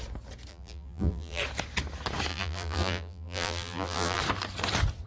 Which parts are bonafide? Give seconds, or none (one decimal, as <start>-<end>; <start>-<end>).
0.0-0.5; 1.4-2.3; 4.2-5.1

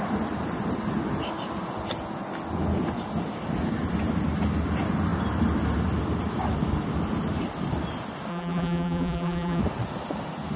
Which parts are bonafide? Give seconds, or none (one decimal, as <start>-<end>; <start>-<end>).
0.0-8.3; 9.6-10.6

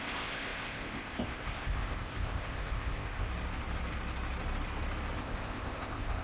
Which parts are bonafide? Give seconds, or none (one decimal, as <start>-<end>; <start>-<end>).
3.3-5.2

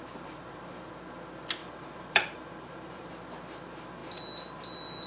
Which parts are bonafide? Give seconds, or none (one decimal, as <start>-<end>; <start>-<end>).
0.0-1.6; 3.1-5.1

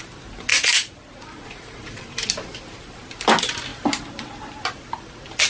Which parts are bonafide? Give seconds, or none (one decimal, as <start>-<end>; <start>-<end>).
0.0-0.5; 2.0-5.5

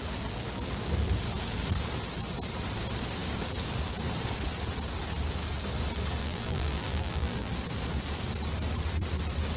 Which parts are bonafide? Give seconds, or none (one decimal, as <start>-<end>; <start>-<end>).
0.0-6.2; 7.5-9.6

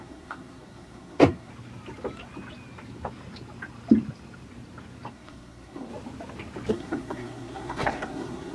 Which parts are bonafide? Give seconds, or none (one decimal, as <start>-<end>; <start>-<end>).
1.5-5.1; 5.9-6.7